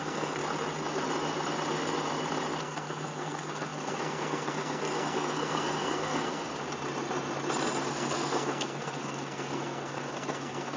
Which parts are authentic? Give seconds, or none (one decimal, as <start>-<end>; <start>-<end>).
0.4-2.6; 6.5-7.9